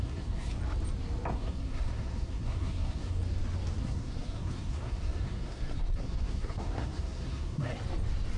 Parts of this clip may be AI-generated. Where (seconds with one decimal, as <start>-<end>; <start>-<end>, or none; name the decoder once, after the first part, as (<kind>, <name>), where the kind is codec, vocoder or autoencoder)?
0.0-0.6 (codec, SNAC); 1.3-3.2; 3.8-7.7